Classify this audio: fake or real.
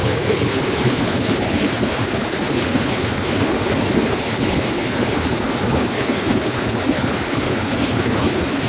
fake